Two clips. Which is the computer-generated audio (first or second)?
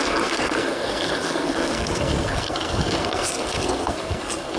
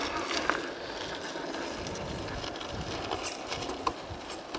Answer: first